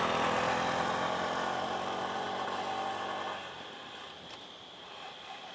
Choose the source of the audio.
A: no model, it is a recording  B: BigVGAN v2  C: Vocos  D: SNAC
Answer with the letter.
B